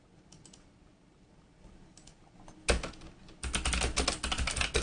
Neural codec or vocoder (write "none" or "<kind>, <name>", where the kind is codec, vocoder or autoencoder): none